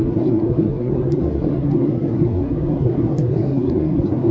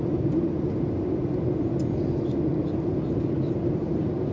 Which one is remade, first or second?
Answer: first